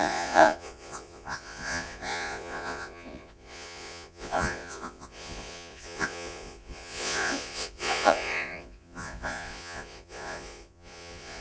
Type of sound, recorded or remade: remade